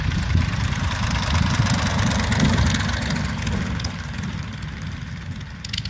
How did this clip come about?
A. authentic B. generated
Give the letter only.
A